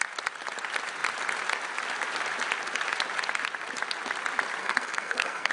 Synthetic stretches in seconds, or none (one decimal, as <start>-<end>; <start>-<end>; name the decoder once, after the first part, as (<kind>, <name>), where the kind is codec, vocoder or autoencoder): 4.6-5.5 (codec, SNAC)